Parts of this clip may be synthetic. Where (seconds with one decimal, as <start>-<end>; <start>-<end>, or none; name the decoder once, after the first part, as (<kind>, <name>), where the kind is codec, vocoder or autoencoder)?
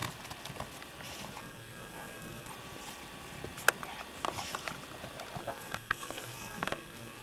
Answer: 1.4-2.5 (codec, SNAC); 5.4-7.2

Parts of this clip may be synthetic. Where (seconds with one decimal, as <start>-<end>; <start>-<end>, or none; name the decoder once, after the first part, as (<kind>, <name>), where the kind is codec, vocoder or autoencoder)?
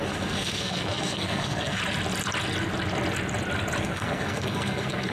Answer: 0.0-1.8 (codec, SNAC); 3.8-5.1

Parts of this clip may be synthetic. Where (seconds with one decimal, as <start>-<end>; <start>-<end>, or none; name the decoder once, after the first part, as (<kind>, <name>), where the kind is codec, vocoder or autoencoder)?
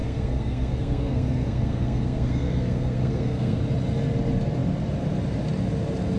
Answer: 0.0-3.6 (codec, SNAC)